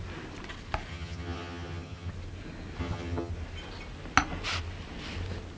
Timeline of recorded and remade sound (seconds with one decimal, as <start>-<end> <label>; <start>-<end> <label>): 0.0-0.9 recorded; 0.9-2.1 remade; 2.1-2.8 recorded; 2.8-3.3 remade; 3.3-5.6 recorded